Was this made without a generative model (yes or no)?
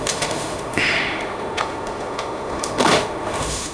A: no